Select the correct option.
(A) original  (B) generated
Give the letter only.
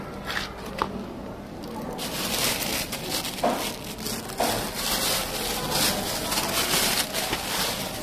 A